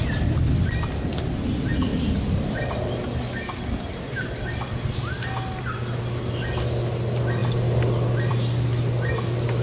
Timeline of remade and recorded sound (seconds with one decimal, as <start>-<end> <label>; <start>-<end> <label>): 0.0-9.6 recorded